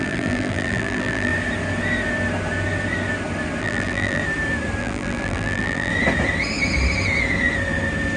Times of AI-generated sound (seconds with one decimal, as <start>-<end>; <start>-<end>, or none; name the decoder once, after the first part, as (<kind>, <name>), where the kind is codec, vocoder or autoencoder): 0.0-1.3 (vocoder, BigVGAN v2); 3.6-4.2; 4.8-5.9